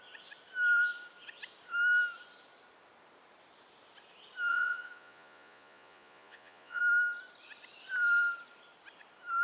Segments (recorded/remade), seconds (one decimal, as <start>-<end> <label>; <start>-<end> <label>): 0.0-4.5 recorded; 4.5-6.8 remade; 6.8-9.4 recorded